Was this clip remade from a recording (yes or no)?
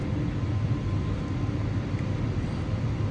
no